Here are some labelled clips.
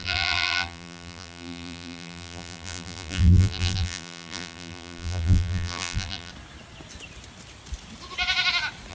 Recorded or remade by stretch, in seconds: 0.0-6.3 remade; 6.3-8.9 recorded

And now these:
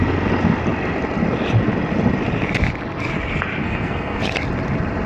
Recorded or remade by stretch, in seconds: 0.0-3.6 recorded; 3.6-4.2 remade; 4.2-5.1 recorded

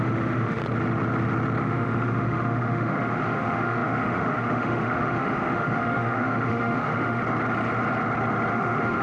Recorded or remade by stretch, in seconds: 0.0-0.6 remade; 0.6-1.6 recorded; 1.6-7.2 remade; 7.2-8.5 recorded; 8.5-9.0 remade

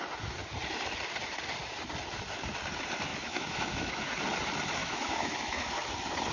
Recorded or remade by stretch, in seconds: 0.0-3.1 recorded; 3.1-4.1 remade; 4.1-4.8 recorded; 4.8-5.7 remade; 5.7-6.3 recorded

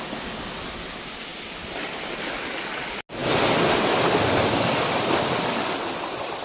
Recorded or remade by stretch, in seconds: 0.0-6.4 recorded